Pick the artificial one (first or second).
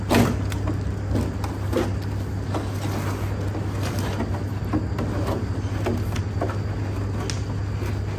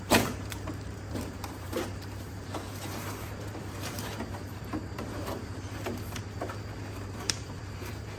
second